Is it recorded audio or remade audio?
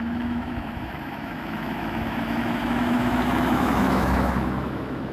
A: remade